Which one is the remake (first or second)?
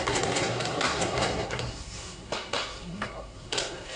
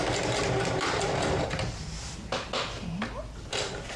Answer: first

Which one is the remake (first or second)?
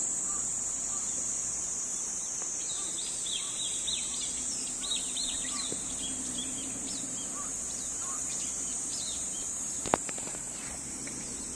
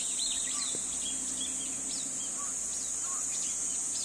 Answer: first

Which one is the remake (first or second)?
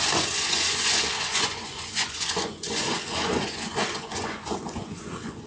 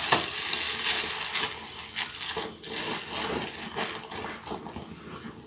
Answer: first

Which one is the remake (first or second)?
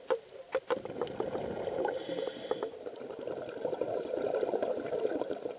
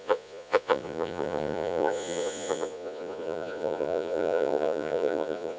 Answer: second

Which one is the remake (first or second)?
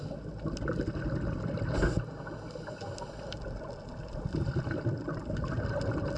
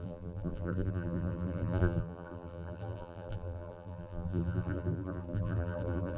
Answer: second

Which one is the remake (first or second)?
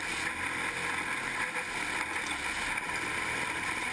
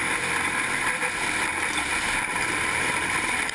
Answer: second